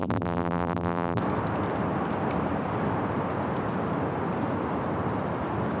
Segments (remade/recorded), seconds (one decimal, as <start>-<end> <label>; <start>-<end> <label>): 0.0-1.2 remade; 1.2-5.8 recorded